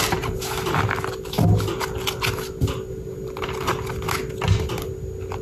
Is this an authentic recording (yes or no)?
yes